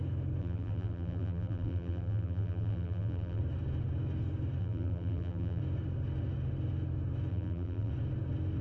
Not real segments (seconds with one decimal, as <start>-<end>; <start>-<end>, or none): 0.4-3.4; 4.6-5.6; 7.3-7.9